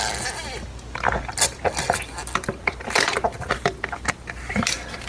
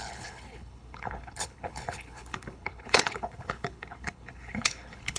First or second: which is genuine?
first